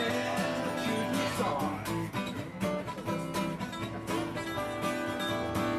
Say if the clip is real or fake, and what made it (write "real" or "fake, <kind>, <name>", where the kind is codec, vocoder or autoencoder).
real